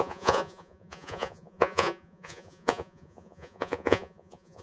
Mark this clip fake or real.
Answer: fake